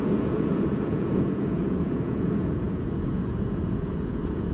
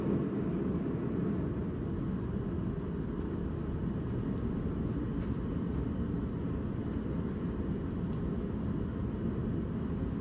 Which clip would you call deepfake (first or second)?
first